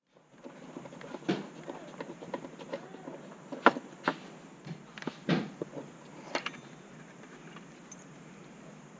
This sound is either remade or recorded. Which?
remade